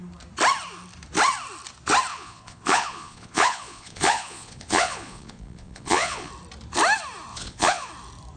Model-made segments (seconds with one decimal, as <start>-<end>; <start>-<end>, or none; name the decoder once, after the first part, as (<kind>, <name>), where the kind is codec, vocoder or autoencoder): 2.1-6.3 (vocoder, Vocos); 7.3-7.9